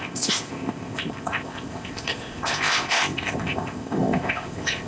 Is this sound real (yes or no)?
no